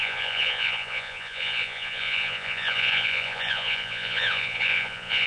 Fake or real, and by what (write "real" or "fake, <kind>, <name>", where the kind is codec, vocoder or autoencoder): fake, vocoder, Vocos